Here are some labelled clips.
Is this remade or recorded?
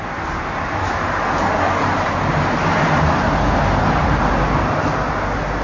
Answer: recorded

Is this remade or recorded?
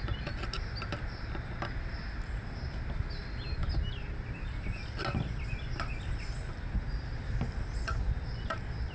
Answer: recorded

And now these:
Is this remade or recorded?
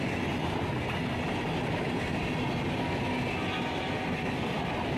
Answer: recorded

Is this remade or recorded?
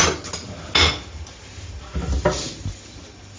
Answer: recorded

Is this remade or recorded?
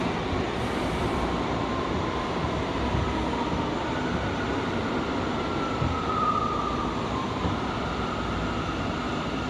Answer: recorded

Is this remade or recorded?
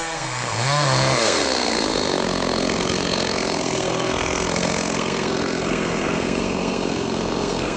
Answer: remade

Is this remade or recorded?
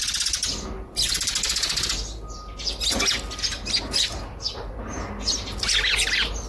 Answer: recorded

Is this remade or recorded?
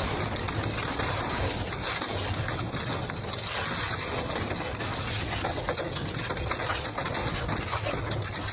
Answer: recorded